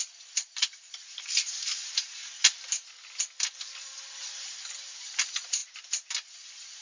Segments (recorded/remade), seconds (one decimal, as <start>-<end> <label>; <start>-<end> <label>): 0.0-2.2 remade; 2.2-5.0 recorded; 5.0-5.6 remade; 5.6-6.3 recorded; 6.3-6.8 remade